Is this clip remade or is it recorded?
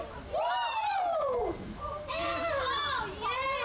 recorded